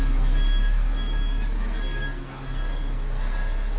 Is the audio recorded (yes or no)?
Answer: no